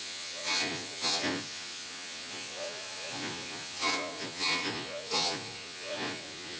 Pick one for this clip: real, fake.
fake